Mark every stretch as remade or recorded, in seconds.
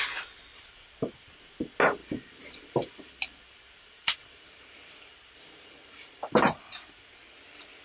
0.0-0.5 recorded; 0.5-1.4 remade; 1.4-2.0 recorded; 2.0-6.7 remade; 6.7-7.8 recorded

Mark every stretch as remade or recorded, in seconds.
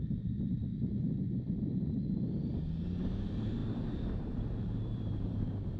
0.0-0.6 remade; 0.6-1.6 recorded; 1.6-5.8 remade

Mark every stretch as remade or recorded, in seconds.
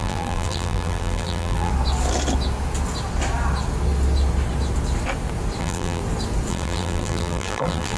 0.0-1.7 remade; 1.7-5.6 recorded; 5.6-6.0 remade; 6.0-6.5 recorded; 6.5-8.0 remade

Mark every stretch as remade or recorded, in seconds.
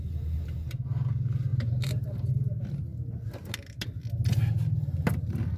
0.0-1.5 recorded; 1.5-2.3 remade; 2.3-5.6 recorded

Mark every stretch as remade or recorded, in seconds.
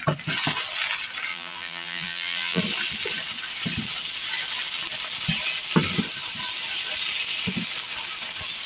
0.0-1.3 recorded; 1.3-2.6 remade; 2.6-8.7 recorded